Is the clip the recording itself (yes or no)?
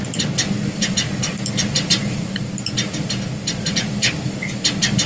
yes